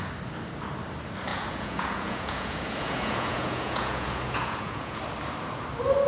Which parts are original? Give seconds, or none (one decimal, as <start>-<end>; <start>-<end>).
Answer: 0.0-1.3; 5.0-6.1